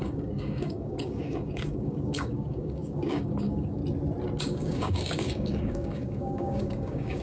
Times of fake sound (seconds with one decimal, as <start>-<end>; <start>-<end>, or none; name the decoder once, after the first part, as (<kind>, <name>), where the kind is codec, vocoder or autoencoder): 0.0-3.8 (codec, DAC); 4.4-7.2